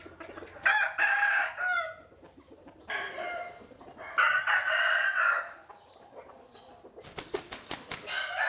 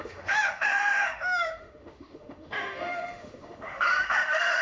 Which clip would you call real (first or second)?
first